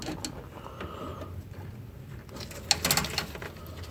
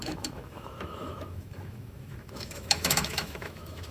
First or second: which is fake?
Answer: second